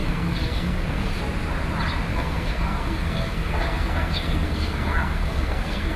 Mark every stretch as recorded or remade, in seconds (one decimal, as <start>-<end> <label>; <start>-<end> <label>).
0.0-1.2 remade; 1.2-2.1 recorded; 2.1-6.0 remade